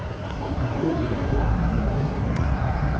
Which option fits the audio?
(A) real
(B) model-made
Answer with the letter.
B